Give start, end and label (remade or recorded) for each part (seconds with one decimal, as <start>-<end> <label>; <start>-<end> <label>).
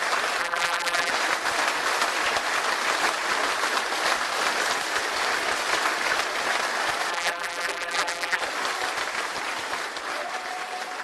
0.0-0.4 recorded; 0.4-1.1 remade; 1.1-7.1 recorded; 7.1-8.4 remade; 8.4-11.0 recorded